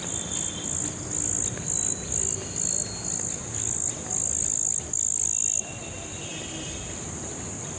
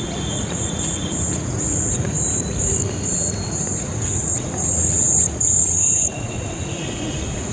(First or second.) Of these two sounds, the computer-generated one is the second